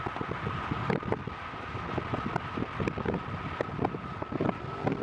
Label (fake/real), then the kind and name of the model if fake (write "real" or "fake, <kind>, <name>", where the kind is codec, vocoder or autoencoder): real